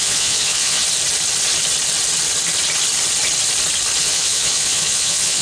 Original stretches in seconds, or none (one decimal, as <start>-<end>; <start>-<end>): 0.8-4.0